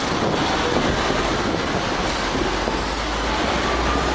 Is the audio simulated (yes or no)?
no